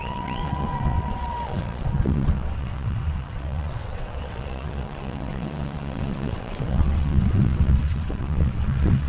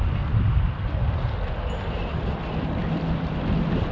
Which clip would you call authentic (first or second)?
second